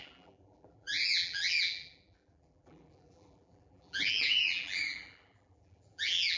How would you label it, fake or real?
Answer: fake